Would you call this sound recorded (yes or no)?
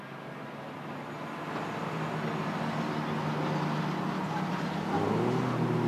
yes